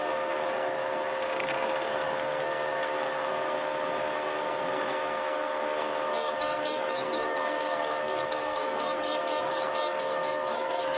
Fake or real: fake